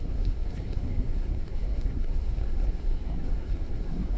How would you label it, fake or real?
fake